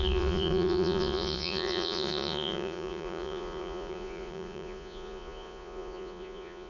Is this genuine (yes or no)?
no